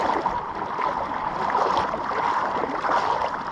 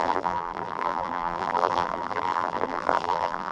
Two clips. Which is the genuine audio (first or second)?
first